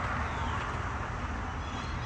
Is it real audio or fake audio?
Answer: real